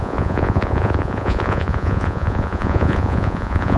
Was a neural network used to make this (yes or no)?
yes